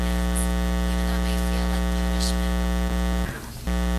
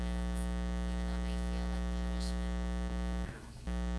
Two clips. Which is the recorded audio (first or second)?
first